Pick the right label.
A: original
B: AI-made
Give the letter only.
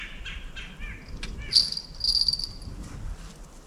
A